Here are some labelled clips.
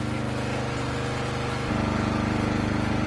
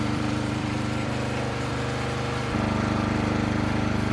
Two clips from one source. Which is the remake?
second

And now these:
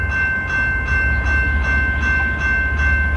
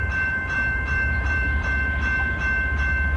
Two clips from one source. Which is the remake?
second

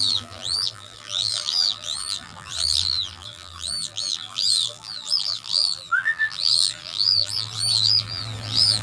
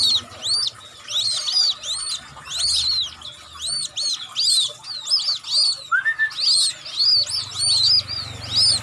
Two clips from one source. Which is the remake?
first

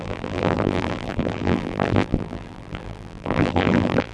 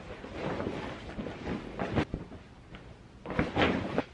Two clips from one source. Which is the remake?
first